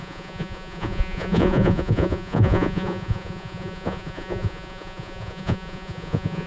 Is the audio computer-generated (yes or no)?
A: yes